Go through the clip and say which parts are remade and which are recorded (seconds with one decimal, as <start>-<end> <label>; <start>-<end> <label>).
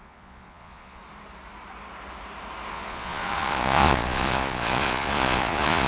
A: 0.0-1.0 remade; 1.0-2.7 recorded; 2.7-5.9 remade